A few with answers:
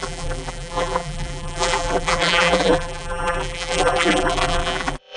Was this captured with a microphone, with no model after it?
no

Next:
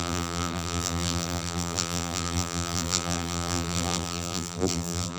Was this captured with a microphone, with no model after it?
no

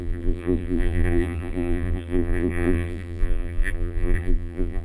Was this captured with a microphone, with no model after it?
no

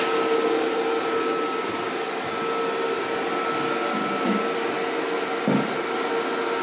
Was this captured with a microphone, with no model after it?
yes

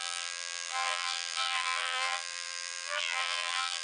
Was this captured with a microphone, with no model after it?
no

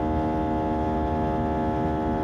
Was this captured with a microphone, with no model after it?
yes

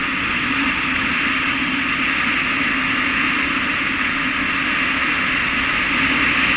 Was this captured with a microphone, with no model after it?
yes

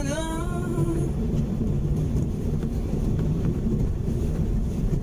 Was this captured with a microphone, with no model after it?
no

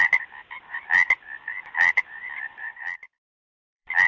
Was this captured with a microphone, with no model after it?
no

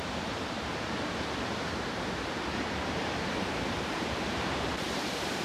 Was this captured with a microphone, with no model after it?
no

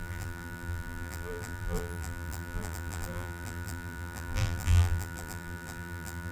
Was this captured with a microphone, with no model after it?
no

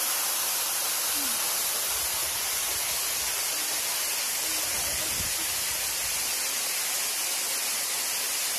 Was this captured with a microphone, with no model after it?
yes